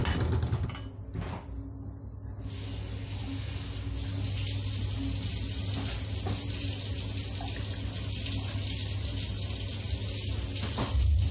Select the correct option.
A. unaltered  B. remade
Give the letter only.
A